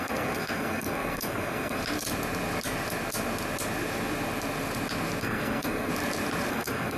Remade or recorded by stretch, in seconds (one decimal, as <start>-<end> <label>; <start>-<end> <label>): 0.0-1.8 remade; 1.8-5.2 recorded; 5.2-5.9 remade; 5.9-6.5 recorded; 6.5-7.0 remade